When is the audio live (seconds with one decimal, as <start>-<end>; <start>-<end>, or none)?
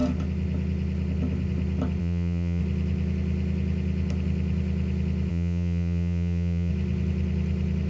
0.0-2.0; 2.6-5.3; 6.7-7.9